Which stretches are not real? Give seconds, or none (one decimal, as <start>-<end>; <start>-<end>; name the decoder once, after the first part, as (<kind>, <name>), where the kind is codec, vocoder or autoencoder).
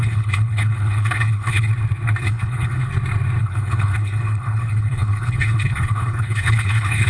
0.0-1.7 (codec, HILCodec); 2.2-2.9; 3.4-7.1